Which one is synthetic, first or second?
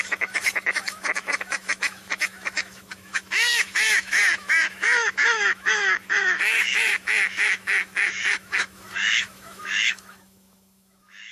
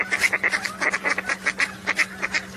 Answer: first